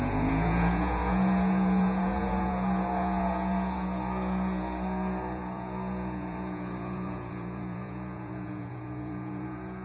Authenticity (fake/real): fake